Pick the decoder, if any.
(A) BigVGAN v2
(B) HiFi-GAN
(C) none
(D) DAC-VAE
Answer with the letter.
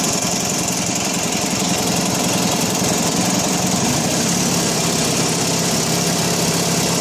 A